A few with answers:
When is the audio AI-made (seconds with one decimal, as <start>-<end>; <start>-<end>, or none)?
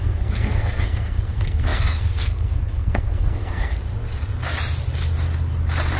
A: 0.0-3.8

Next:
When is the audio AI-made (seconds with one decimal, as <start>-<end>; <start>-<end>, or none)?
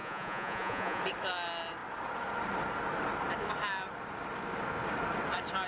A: 0.0-1.0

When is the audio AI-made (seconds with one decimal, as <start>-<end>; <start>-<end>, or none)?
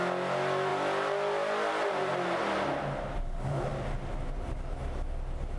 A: none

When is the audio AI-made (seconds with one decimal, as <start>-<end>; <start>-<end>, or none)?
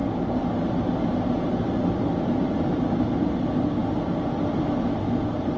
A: none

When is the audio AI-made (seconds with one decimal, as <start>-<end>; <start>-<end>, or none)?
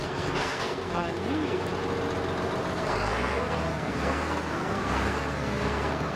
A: 0.0-1.7; 2.7-6.2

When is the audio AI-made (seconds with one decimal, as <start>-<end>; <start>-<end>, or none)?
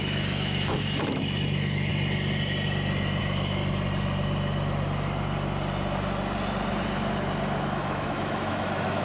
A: 0.0-1.9; 3.2-3.6; 7.6-9.0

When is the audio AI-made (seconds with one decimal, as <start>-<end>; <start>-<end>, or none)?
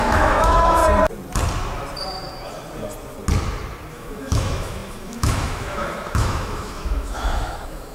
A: 0.0-0.8; 3.9-7.9